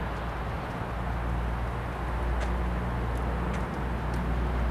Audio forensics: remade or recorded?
recorded